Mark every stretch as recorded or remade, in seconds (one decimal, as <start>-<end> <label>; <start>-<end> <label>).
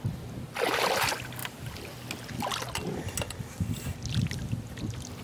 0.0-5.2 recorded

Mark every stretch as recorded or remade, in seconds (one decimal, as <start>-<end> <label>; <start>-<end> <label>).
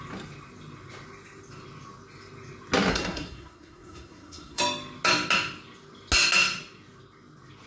0.0-2.9 recorded; 2.9-4.6 remade; 4.6-7.7 recorded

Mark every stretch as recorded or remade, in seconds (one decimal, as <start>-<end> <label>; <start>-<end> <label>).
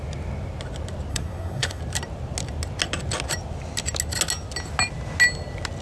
0.0-1.1 recorded; 1.1-1.8 remade; 1.8-5.8 recorded